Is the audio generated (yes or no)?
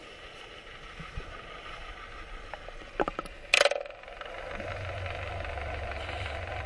no